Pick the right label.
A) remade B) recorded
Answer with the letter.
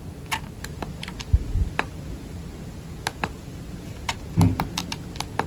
B